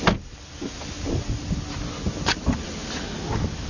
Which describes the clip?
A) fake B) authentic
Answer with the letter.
B